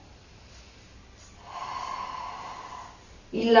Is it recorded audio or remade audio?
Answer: recorded